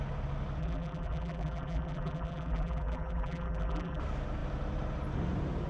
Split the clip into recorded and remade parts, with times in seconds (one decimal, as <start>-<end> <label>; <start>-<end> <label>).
0.0-0.6 recorded; 0.6-4.0 remade; 4.0-5.7 recorded